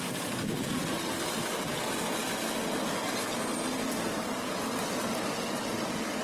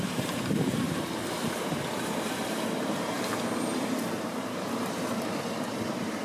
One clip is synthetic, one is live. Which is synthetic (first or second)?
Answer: second